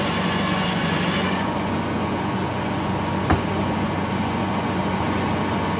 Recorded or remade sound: remade